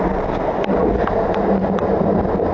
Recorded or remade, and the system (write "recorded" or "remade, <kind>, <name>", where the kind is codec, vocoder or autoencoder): recorded